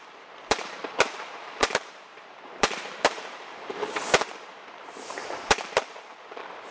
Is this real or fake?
fake